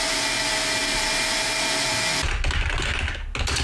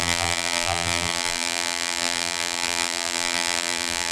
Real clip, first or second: first